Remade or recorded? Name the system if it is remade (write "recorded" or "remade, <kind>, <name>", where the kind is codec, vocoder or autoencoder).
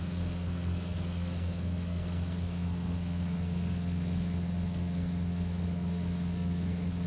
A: remade, codec, SNAC